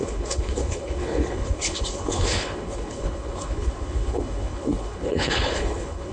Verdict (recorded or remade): remade